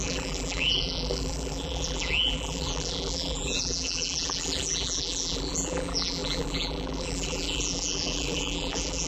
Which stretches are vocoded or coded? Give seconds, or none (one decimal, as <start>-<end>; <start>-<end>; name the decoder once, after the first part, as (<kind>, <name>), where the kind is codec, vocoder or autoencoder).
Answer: 0.0-9.1 (vocoder, BigVGAN v2)